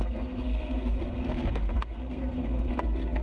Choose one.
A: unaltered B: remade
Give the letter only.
B